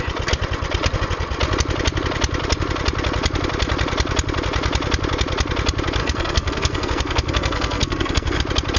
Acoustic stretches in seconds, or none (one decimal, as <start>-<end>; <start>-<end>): 0.0-6.0; 8.4-8.8